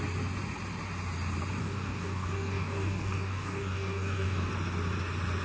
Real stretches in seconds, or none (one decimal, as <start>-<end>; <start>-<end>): 0.0-1.6; 4.5-5.4